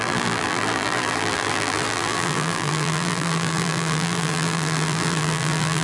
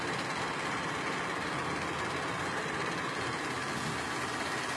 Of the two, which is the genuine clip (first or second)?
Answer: second